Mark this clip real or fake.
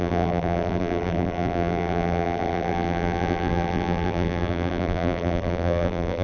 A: fake